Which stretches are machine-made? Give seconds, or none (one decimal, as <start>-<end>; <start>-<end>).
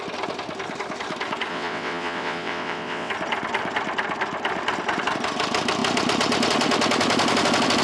1.5-3.1